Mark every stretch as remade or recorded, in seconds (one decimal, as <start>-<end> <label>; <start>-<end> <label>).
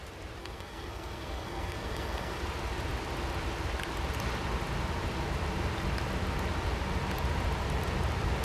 0.0-0.4 recorded; 0.4-2.4 remade; 2.4-8.4 recorded